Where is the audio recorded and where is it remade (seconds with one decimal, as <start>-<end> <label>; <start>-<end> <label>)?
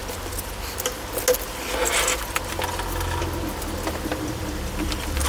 0.0-4.1 recorded; 4.1-5.3 remade